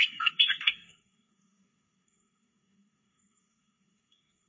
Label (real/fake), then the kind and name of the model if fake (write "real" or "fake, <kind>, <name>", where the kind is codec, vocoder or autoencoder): fake, codec, SNAC